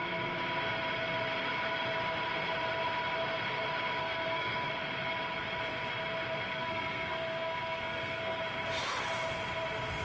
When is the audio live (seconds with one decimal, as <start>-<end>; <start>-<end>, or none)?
0.0-4.0; 4.7-6.5; 8.4-10.0